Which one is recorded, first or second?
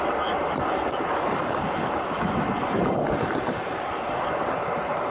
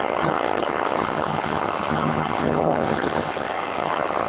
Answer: first